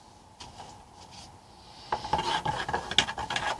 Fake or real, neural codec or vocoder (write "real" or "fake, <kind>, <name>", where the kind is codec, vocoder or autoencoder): real